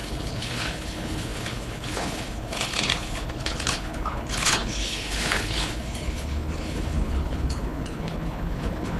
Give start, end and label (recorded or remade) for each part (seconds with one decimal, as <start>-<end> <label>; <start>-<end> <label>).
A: 0.0-9.0 remade